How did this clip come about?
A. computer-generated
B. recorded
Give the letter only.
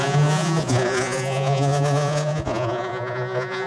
A